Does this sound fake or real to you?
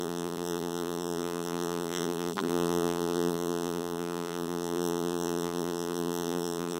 fake